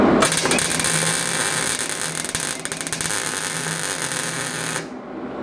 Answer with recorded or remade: recorded